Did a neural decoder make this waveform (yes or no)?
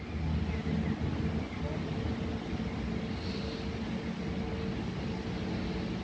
no